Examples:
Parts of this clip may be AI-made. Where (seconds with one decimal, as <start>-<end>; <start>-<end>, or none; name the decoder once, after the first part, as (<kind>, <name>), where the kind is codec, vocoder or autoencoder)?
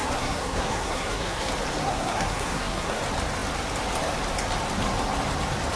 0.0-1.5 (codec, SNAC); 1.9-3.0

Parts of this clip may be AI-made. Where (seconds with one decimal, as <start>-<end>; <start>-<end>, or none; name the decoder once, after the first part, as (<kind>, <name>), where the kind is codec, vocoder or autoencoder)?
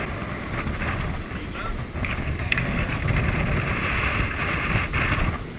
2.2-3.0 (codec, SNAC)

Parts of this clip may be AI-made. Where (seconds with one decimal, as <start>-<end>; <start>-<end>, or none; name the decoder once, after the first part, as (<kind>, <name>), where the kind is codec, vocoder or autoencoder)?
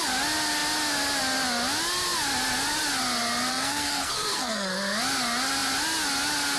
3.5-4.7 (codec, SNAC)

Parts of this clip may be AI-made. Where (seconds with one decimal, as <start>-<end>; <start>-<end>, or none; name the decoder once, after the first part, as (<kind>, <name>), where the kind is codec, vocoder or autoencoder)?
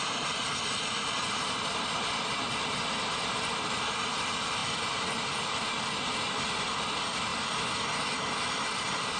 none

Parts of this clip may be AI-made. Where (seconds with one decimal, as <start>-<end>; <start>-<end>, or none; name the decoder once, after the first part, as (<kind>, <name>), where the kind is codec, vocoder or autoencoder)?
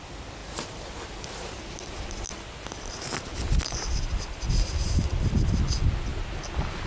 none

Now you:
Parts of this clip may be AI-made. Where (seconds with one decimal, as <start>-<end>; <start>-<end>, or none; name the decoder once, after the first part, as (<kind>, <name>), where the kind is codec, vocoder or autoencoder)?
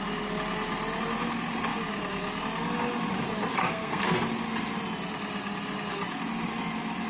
3.6-4.2 (codec, SNAC)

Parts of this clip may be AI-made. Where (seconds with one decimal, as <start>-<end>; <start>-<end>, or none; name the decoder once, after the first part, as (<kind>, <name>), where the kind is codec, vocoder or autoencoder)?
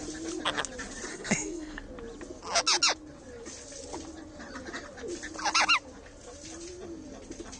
1.1-1.8 (codec, SNAC)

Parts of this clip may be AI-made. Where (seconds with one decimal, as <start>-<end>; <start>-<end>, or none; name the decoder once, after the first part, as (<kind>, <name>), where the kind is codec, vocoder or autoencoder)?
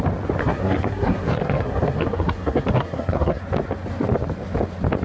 0.4-3.4 (codec, SNAC)